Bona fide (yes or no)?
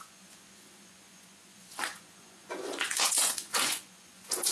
no